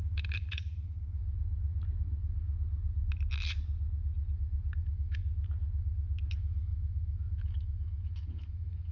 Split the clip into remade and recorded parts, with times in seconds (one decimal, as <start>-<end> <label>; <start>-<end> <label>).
0.0-1.2 remade; 1.2-4.8 recorded; 4.8-5.2 remade; 5.2-6.3 recorded; 6.3-8.9 remade